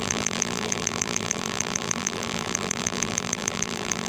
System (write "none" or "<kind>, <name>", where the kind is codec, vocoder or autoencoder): vocoder, BigVGAN v2